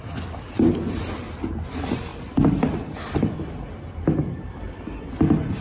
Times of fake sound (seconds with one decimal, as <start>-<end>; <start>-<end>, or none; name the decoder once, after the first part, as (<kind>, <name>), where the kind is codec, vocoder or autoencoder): 2.1-5.1 (vocoder, BigVGAN v2)